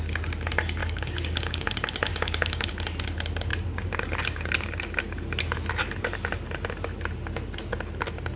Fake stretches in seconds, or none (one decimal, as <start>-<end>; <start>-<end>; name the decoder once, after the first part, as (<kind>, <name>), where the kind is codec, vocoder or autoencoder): 0.8-1.7 (codec, DAC); 2.1-2.7